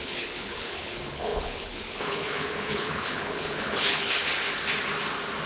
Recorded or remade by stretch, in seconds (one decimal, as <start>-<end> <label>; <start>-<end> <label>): 0.0-4.2 remade; 4.2-5.5 recorded